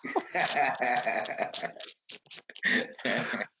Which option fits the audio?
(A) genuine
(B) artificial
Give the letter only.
A